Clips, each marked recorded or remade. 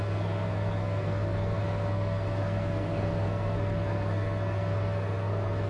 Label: remade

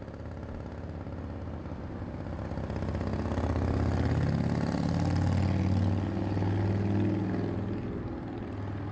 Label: recorded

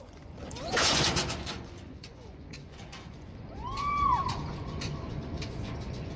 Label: remade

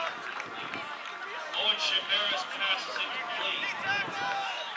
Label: recorded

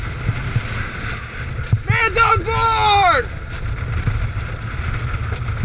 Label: recorded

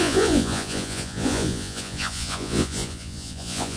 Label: remade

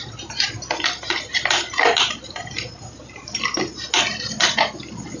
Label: recorded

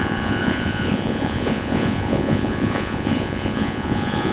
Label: remade